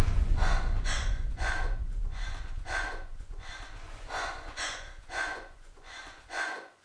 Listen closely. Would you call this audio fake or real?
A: fake